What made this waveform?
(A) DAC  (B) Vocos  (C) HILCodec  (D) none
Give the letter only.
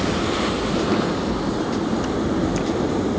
D